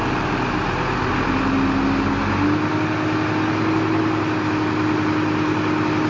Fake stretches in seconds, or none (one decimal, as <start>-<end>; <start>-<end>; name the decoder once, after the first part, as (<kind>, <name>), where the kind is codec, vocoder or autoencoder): none